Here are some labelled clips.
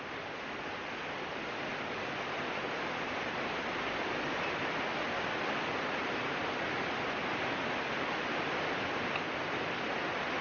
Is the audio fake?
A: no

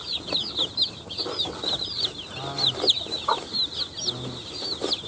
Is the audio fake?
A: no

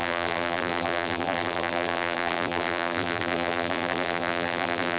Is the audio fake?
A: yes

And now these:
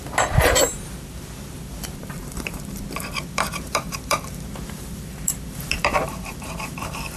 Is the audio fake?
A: yes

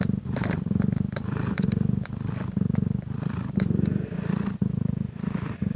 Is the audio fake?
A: yes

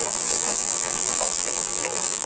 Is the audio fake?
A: yes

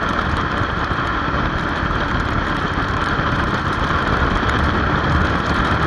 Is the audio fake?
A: yes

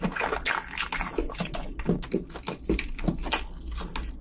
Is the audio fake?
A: no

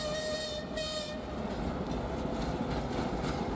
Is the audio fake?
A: no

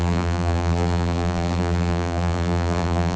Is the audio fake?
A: yes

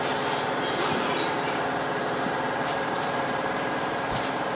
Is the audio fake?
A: yes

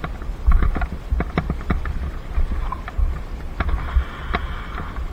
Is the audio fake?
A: no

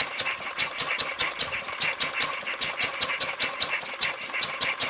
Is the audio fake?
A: no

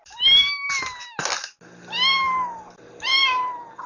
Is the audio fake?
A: no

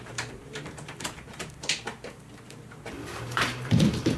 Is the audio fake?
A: yes